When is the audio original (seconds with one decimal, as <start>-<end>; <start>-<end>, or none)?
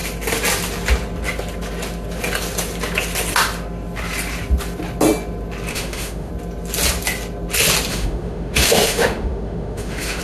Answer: 0.0-5.7; 6.3-7.9